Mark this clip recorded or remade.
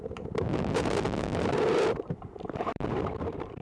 remade